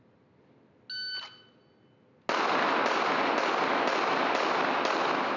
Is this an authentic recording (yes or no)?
yes